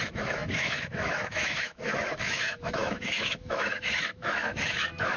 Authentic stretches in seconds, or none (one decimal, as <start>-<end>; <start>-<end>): none